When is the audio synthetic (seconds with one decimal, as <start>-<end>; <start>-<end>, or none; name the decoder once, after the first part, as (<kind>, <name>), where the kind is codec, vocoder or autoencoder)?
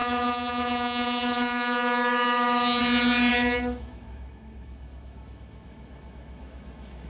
0.0-2.8 (autoencoder, DAC-VAE); 3.3-7.1